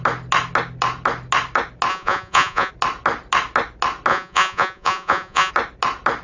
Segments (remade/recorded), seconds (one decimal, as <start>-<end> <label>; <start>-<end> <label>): 0.0-1.9 recorded; 1.9-2.7 remade; 2.7-4.1 recorded; 4.1-5.5 remade; 5.5-6.2 recorded